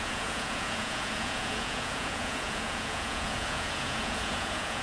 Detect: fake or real fake